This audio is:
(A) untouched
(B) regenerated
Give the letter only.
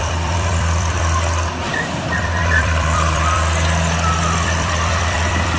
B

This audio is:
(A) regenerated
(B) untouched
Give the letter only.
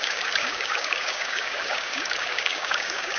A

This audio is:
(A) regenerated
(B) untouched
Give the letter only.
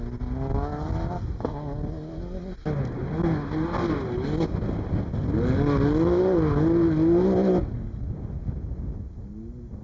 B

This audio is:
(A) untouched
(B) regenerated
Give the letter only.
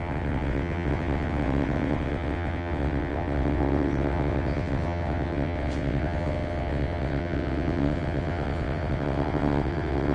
B